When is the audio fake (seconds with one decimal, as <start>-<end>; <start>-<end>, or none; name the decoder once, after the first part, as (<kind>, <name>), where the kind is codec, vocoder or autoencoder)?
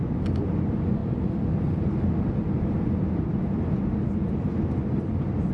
none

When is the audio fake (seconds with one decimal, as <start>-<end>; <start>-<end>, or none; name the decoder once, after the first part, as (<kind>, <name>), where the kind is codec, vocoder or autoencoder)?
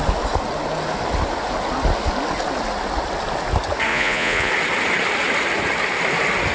3.9-4.5 (vocoder, Vocos)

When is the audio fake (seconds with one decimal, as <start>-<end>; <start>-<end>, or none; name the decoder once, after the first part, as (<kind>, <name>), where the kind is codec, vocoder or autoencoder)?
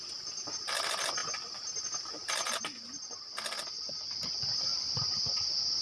none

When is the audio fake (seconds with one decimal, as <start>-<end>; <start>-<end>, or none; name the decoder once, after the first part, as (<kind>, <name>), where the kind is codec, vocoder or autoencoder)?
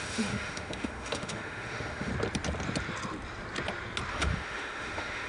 0.0-2.1 (autoencoder, DAC-VAE); 4.1-5.3